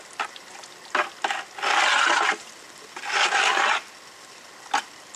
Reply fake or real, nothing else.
real